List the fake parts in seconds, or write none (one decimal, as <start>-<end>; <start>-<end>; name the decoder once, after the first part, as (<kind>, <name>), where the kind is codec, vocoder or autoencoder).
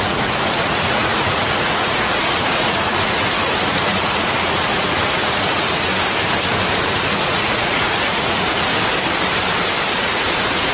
0.0-5.9 (vocoder, Vocos); 6.7-8.7; 10.0-10.7